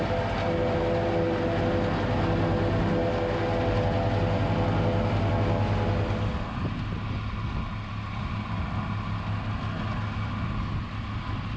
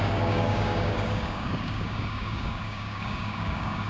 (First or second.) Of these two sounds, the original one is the first